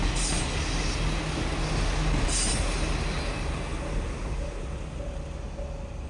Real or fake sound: real